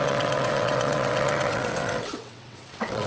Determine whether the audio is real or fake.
fake